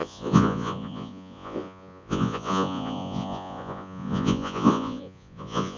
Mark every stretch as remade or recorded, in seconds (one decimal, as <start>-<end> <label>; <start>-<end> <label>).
0.0-5.8 remade